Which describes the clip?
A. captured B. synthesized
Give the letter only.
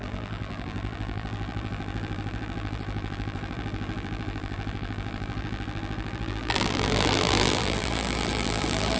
B